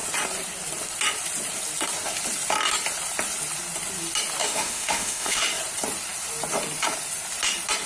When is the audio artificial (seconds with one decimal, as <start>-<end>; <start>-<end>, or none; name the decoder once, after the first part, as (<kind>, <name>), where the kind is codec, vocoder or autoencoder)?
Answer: 4.4-5.4 (autoencoder, DAC-VAE)